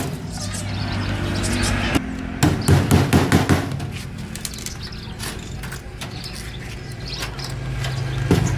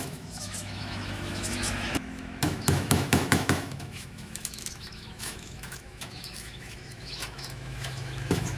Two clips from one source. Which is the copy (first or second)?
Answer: second